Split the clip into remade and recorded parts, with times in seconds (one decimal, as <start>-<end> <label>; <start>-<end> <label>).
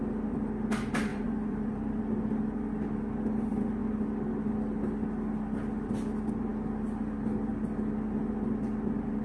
0.0-1.1 recorded; 1.1-2.0 remade; 2.0-9.2 recorded